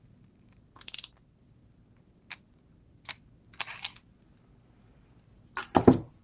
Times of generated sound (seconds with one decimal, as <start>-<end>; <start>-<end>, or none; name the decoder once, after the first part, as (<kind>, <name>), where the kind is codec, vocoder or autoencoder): 0.0-1.6 (vocoder, BigVGAN v2); 5.3-6.2